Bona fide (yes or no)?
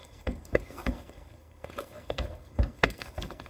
no